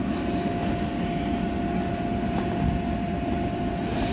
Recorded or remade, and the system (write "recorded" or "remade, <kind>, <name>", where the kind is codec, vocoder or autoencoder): recorded